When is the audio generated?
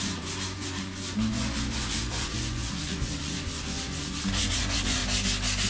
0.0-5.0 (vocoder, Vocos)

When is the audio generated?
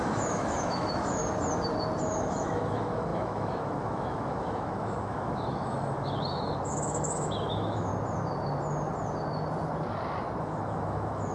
0.0-1.2 (autoencoder, DAC-VAE); 2.0-7.9; 10.4-11.3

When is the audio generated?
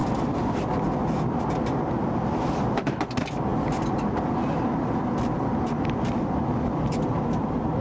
none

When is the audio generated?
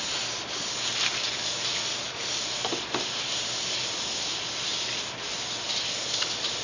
0.0-1.7 (vocoder, BigVGAN v2); 2.2-4.7; 6.1-6.6